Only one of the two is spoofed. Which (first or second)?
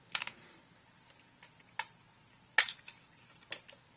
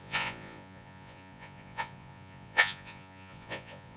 second